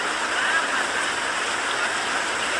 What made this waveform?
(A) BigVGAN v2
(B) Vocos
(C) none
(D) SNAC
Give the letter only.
C